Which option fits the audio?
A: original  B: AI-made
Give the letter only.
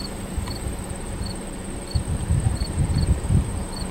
B